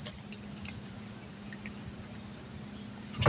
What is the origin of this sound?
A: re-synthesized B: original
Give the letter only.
B